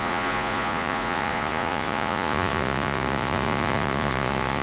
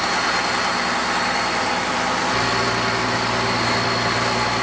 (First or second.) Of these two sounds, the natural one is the second